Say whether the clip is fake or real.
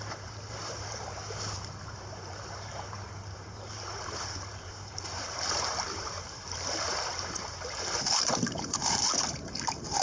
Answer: fake